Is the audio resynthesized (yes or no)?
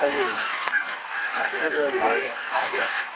yes